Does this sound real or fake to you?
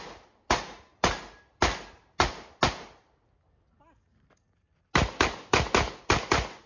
real